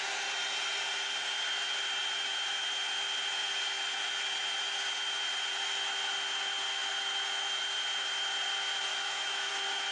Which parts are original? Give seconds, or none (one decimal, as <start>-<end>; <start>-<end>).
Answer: 0.0-8.9; 9.5-9.9